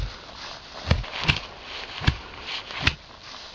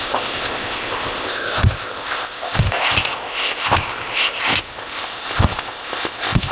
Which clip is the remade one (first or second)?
second